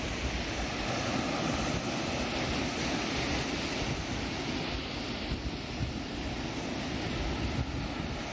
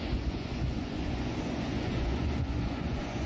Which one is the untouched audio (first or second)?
first